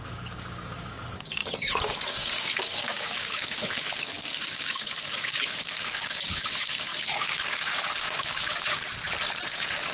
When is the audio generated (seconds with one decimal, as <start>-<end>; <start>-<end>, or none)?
0.0-8.8; 9.5-9.9